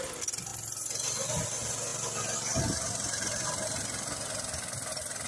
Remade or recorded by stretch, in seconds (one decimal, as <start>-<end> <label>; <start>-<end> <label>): 0.0-5.3 recorded